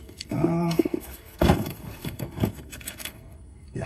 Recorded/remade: remade